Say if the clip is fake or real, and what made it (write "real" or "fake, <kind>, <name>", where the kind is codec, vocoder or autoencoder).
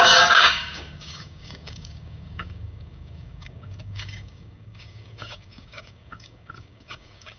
fake, codec, DAC